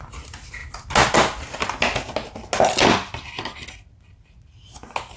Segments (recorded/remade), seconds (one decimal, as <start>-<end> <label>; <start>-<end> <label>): 0.0-5.2 recorded